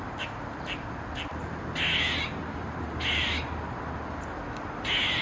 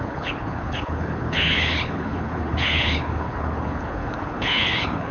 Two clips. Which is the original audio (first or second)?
first